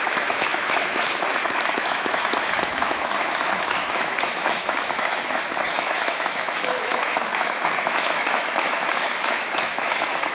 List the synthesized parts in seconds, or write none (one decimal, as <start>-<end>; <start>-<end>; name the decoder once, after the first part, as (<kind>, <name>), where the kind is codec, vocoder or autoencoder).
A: 0.0-10.3 (autoencoder, DAC-VAE)